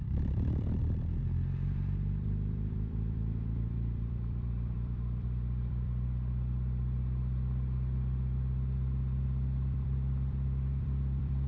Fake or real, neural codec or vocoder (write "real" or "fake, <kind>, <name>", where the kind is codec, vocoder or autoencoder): fake, vocoder, BigVGAN v2